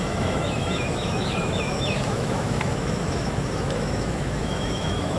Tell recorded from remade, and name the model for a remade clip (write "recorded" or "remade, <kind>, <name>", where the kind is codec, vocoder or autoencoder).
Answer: remade, autoencoder, DAC-VAE